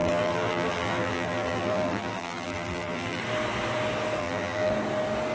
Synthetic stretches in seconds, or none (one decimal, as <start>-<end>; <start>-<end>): 0.0-3.2; 4.2-4.7

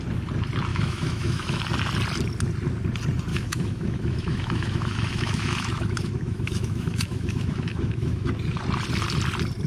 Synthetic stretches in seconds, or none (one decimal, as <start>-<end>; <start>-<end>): 0.7-1.6; 3.3-8.3

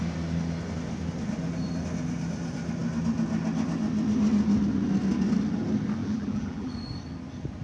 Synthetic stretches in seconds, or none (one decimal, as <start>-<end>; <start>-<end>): 6.0-6.7

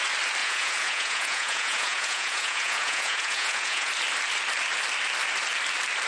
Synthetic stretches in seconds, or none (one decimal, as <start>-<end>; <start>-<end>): 0.4-3.9